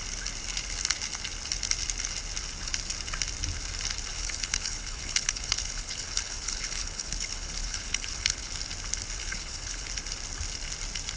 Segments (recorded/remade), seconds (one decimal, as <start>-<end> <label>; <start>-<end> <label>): 0.0-4.1 recorded; 4.1-8.5 remade; 8.5-9.2 recorded; 9.2-9.9 remade; 9.9-11.2 recorded